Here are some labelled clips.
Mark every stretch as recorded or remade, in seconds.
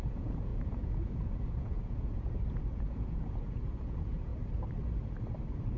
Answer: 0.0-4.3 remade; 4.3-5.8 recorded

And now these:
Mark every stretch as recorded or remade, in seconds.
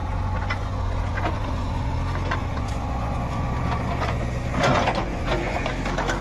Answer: 0.0-2.0 remade; 2.0-2.4 recorded; 2.4-5.7 remade; 5.7-6.2 recorded